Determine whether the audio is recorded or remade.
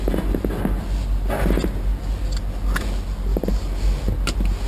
recorded